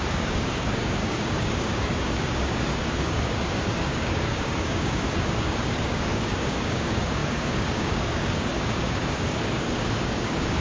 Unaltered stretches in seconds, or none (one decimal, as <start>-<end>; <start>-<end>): none